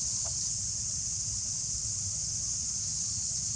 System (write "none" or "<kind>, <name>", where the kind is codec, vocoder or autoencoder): vocoder, WaveNeXt